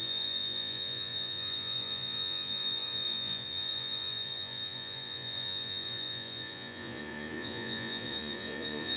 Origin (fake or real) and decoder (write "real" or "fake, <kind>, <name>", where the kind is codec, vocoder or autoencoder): fake, vocoder, Vocos